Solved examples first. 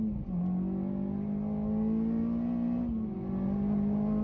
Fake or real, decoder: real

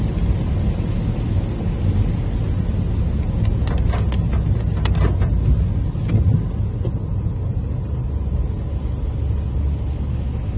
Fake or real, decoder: real